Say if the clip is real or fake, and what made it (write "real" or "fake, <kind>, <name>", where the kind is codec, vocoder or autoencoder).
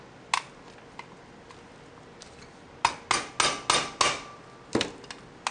real